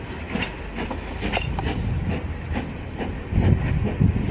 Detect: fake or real real